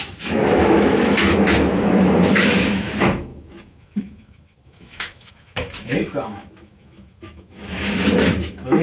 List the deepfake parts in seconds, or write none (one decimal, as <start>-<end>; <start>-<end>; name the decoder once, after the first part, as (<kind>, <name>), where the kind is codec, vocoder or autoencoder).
0.0-8.8 (autoencoder, DAC-VAE)